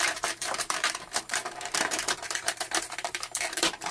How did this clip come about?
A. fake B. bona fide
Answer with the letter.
A